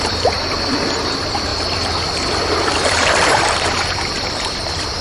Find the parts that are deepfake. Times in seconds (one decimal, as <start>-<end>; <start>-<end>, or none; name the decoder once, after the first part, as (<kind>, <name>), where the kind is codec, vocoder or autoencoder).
0.0-1.5 (vocoder, BigVGAN v2); 2.7-5.0